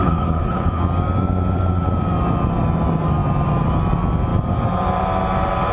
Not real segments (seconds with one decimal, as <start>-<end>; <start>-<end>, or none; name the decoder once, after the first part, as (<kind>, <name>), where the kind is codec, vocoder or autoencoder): 0.0-0.8 (codec, HILCodec)